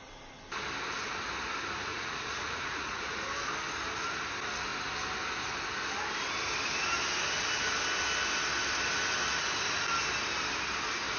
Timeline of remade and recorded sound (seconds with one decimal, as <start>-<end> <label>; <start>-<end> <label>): 0.0-1.9 recorded; 1.9-3.2 remade; 3.2-11.2 recorded